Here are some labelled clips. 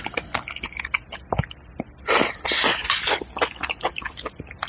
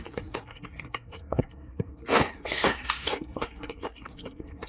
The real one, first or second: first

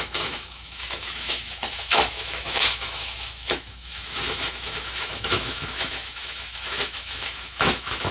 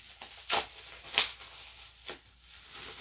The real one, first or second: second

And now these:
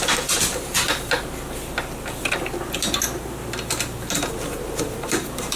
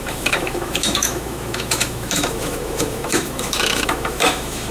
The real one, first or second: first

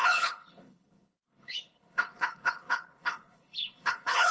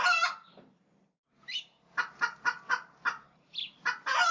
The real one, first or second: second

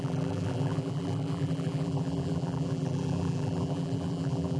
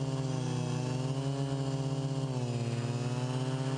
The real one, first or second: second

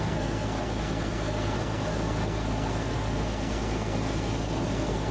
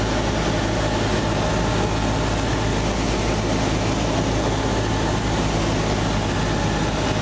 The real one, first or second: second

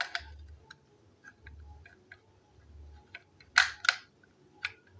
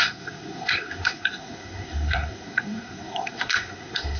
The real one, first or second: first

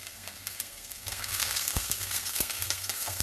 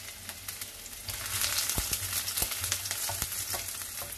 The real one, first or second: second